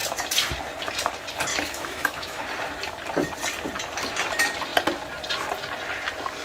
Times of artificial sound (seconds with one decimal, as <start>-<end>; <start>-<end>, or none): 1.5-2.4